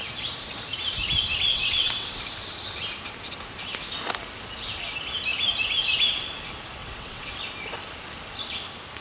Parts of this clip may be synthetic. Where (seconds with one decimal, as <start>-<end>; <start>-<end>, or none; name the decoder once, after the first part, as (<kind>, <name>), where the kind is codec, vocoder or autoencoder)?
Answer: 1.5-2.2 (vocoder, WaveNeXt); 6.8-7.3